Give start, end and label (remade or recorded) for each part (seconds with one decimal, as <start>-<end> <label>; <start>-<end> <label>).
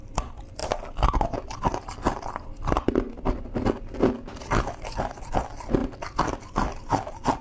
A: 0.0-7.4 recorded